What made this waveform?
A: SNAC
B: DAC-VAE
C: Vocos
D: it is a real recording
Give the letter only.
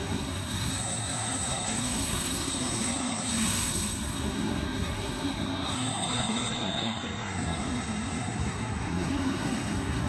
A